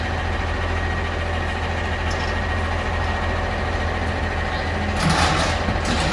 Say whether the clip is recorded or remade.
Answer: recorded